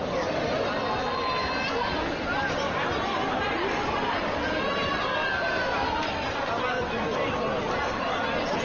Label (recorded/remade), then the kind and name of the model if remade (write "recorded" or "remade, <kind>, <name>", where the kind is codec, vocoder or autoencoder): recorded